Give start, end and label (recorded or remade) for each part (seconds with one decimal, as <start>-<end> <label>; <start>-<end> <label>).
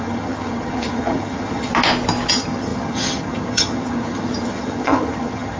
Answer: 0.0-1.7 remade; 1.7-2.3 recorded; 2.3-5.6 remade